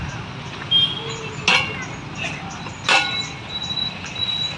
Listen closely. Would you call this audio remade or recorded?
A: recorded